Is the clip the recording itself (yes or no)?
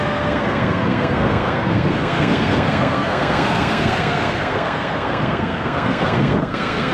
no